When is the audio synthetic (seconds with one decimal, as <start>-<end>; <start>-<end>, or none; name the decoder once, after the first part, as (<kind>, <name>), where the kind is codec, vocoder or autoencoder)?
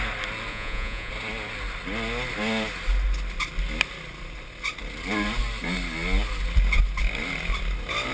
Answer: 0.5-1.1 (vocoder, Vocos)